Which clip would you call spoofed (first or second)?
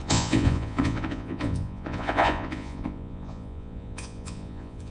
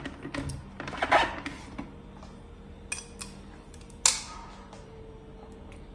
first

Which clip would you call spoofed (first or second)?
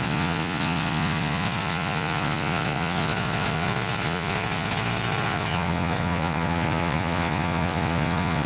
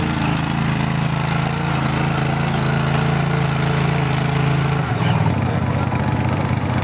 first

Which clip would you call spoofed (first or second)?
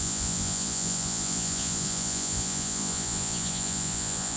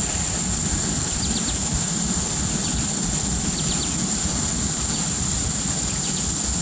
first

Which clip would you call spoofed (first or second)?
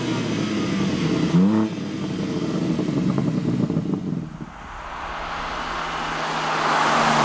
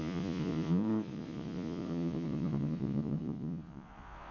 second